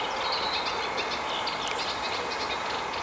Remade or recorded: recorded